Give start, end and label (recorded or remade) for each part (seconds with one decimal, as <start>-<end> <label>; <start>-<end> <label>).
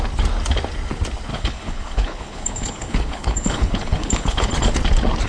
0.0-1.3 recorded; 1.3-4.5 remade; 4.5-5.3 recorded